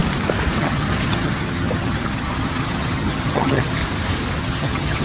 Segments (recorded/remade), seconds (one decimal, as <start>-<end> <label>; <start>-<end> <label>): 0.0-0.6 recorded; 0.6-3.8 remade; 3.8-4.4 recorded; 4.4-5.0 remade